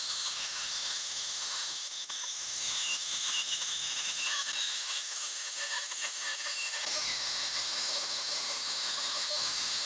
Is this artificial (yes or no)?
yes